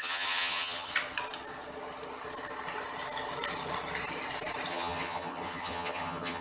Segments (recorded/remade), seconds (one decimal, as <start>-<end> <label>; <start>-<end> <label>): 0.0-0.9 remade; 0.9-4.7 recorded; 4.7-6.4 remade